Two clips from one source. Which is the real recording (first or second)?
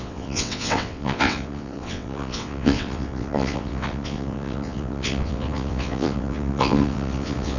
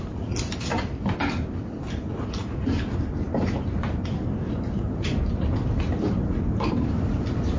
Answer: second